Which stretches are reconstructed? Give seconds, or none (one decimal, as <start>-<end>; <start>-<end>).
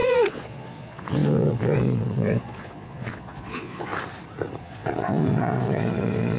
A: 0.0-3.9; 4.6-6.4